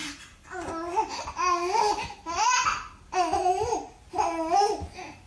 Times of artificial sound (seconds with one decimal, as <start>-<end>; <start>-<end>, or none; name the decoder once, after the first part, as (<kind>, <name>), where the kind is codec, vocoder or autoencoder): none